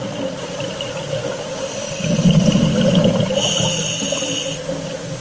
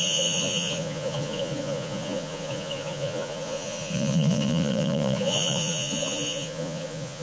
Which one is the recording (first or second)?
first